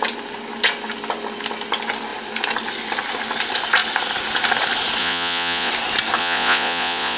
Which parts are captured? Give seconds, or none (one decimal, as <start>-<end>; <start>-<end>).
0.0-5.0; 5.7-6.2